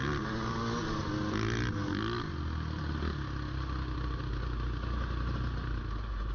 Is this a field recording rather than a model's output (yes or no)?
yes